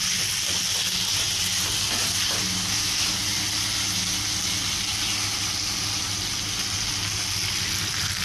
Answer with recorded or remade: recorded